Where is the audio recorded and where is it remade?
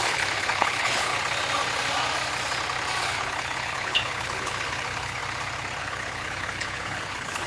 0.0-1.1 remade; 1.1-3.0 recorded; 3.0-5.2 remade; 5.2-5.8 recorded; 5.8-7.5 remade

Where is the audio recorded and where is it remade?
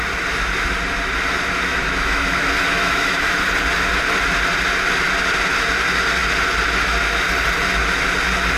0.0-1.7 recorded; 1.7-3.5 remade; 3.5-8.6 recorded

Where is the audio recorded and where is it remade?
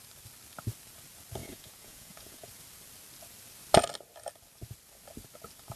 0.0-1.4 recorded; 1.4-2.5 remade; 2.5-5.8 recorded